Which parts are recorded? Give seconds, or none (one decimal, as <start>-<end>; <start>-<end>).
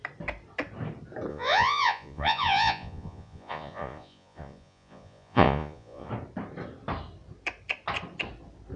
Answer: 0.0-1.3; 6.1-8.8